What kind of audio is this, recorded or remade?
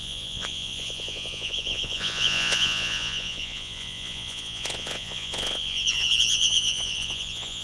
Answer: remade